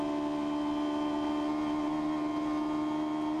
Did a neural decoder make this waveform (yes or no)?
no